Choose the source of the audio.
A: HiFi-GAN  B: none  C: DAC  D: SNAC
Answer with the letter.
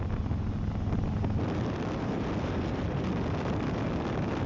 B